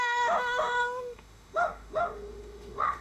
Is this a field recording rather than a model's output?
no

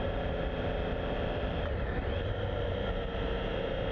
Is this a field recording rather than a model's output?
yes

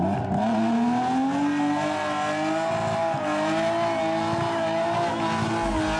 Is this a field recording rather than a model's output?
yes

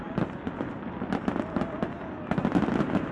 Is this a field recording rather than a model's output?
yes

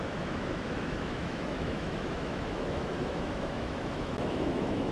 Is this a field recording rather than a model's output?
no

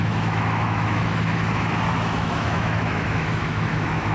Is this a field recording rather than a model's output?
no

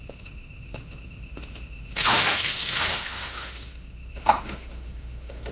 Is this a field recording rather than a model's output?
no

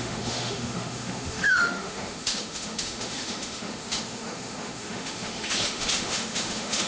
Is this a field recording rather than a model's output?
no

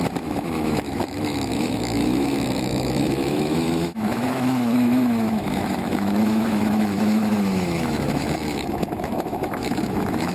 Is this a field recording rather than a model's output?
no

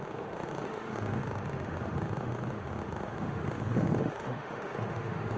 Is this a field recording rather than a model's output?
no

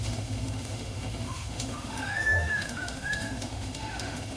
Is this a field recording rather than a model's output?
no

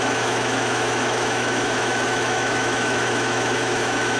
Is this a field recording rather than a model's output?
no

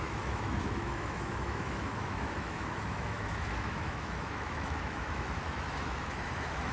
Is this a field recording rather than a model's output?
no